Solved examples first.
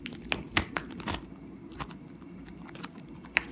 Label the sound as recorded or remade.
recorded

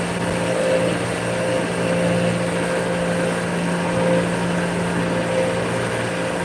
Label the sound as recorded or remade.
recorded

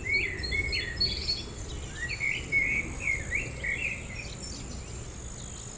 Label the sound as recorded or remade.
recorded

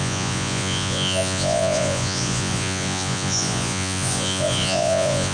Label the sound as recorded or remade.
remade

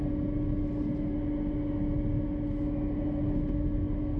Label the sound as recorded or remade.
recorded